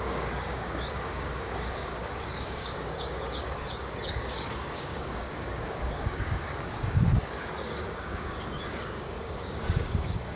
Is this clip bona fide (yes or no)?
no